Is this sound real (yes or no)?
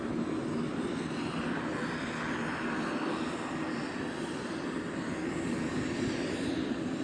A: yes